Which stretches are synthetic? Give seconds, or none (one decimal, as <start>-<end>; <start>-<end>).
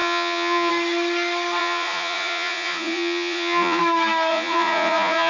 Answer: 0.0-0.7; 1.6-3.8; 4.3-5.3